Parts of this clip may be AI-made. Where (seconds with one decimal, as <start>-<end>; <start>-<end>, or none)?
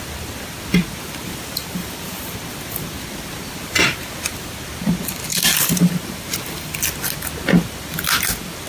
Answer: 1.6-2.2; 5.4-6.3